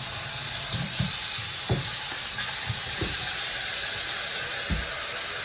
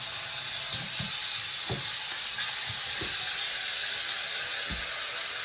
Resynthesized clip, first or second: first